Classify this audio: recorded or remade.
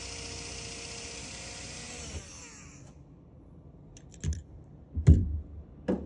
recorded